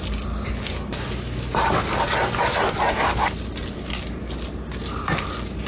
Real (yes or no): yes